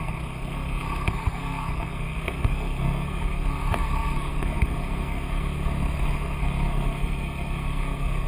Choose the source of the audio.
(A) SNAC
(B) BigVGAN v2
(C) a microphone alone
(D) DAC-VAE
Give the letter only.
A